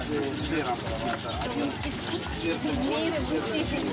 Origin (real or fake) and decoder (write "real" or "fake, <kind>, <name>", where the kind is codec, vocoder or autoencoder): real